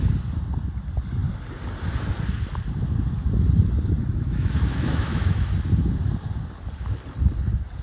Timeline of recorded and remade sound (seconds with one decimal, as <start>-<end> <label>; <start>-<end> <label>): 0.0-4.0 recorded; 4.0-5.5 remade; 5.5-7.8 recorded